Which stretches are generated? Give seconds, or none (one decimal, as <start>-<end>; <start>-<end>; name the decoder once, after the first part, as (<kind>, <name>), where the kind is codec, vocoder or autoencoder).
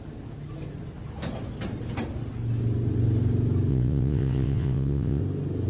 3.7-5.2 (vocoder, WaveNeXt)